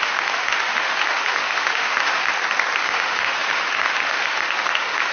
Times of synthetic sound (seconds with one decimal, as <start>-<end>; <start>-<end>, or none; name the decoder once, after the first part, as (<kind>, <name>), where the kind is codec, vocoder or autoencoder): 0.0-2.3 (autoencoder, DAC-VAE); 2.8-5.1